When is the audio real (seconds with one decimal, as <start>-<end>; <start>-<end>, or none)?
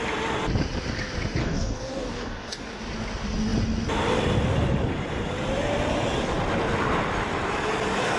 0.0-1.4; 2.8-8.2